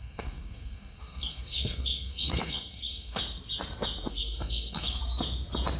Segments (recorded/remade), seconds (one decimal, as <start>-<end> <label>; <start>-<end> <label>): 0.0-3.2 remade; 3.2-4.1 recorded; 4.1-5.0 remade; 5.0-5.8 recorded